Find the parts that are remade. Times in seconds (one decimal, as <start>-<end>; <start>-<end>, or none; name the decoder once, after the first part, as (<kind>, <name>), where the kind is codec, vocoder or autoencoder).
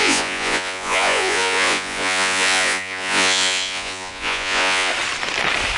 0.0-4.9 (vocoder, Vocos)